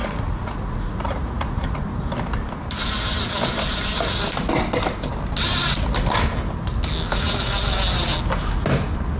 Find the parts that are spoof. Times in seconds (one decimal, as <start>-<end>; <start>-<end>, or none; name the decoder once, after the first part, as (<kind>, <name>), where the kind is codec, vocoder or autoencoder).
0.0-1.8 (vocoder, Vocos)